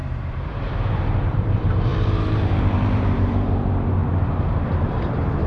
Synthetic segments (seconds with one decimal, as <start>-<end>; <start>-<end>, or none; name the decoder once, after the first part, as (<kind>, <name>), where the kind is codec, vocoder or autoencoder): 0.0-4.0 (vocoder, BigVGAN v2); 4.7-5.5